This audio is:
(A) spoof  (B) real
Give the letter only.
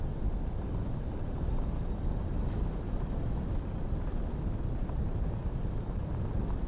B